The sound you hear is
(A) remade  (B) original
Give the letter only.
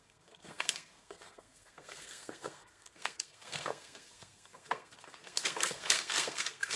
A